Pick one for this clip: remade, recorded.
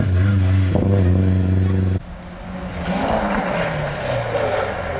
recorded